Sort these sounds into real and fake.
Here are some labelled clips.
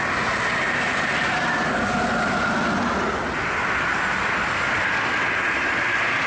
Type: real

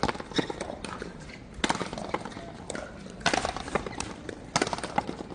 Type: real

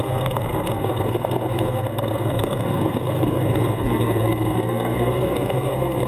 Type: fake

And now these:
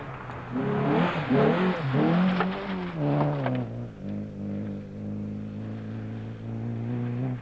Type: real